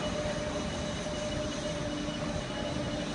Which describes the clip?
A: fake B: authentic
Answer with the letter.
B